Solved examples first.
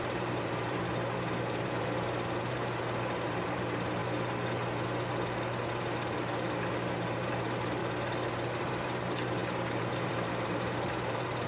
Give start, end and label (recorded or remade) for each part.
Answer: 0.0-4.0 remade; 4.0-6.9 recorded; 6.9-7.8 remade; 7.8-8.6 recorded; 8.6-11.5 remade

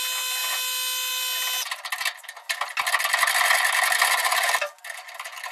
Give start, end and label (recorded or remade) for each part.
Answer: 0.0-5.5 recorded

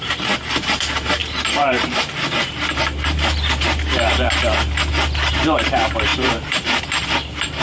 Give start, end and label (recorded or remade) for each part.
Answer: 0.0-7.6 remade

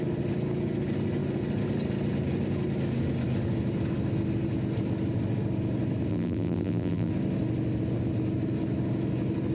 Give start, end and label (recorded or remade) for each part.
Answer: 0.0-6.1 recorded; 6.1-7.1 remade; 7.1-9.5 recorded

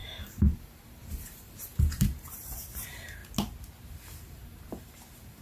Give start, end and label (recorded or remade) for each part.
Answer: 0.0-3.2 remade; 3.2-3.9 recorded; 3.9-5.4 remade